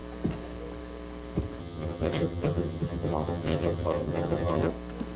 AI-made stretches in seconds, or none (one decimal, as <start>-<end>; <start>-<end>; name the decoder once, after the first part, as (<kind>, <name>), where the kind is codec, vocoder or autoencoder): 1.6-4.7 (vocoder, HiFi-GAN)